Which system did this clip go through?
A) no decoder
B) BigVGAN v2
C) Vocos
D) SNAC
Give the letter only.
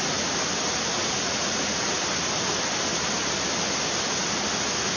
A